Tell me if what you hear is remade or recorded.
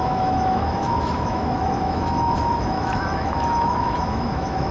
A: remade